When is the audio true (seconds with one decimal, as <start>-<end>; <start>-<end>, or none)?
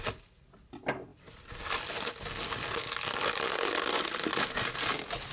0.0-1.1; 2.2-5.3